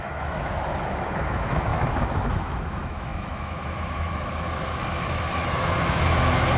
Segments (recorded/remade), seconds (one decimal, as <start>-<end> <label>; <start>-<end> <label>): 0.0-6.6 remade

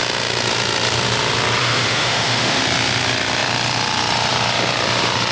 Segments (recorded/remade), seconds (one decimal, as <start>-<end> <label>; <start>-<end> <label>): 0.0-1.6 recorded; 1.6-2.6 remade; 2.6-5.3 recorded

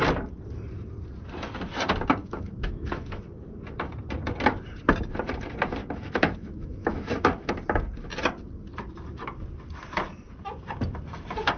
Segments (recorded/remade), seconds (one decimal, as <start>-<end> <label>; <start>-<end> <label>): 0.0-2.2 recorded; 2.2-3.2 remade; 3.2-5.8 recorded; 5.8-7.5 remade; 7.5-11.6 recorded